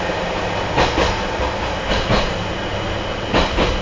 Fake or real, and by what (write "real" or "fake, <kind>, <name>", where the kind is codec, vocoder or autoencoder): real